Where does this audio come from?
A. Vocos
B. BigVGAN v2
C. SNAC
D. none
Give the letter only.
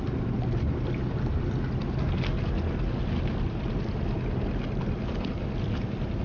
D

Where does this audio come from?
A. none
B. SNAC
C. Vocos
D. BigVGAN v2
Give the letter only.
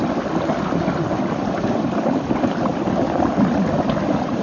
A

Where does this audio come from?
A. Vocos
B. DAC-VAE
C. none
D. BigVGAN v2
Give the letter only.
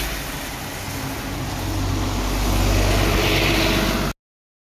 C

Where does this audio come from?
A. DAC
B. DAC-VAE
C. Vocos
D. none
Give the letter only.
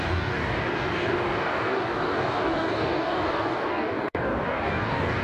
A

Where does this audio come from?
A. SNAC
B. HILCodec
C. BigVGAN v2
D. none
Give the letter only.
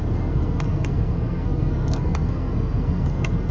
A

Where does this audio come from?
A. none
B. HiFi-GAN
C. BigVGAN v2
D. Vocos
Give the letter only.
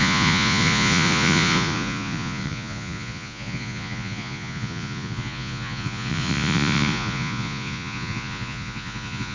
D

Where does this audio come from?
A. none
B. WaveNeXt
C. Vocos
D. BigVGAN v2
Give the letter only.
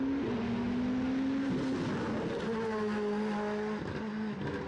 A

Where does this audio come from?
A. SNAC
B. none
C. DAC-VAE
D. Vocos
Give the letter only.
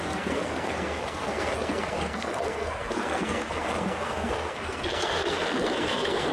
A